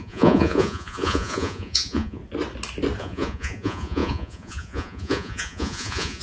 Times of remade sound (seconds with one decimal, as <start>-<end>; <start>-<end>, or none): 0.0-2.2; 3.0-6.2